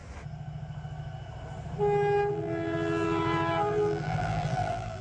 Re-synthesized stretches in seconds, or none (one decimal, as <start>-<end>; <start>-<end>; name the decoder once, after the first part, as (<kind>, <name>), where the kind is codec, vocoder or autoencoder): 2.3-5.0 (vocoder, BigVGAN v2)